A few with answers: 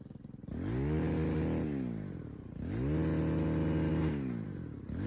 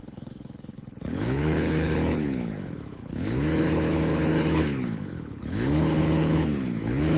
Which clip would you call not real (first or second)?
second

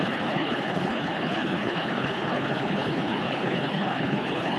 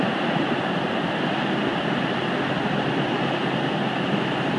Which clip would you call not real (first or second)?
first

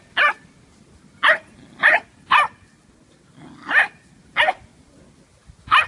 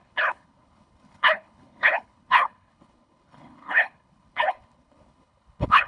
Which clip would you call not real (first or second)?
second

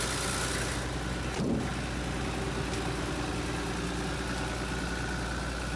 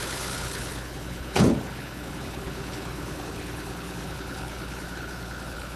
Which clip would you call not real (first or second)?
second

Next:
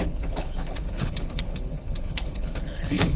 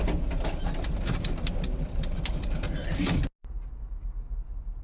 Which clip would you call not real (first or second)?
first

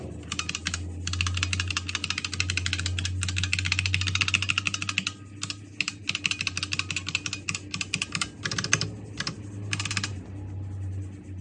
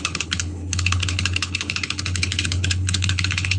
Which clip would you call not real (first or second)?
second